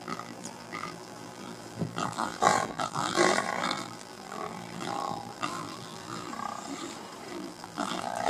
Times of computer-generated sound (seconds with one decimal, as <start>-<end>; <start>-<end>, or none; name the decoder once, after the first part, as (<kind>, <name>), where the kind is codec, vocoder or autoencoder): 0.0-6.3 (vocoder, BigVGAN v2); 7.3-8.3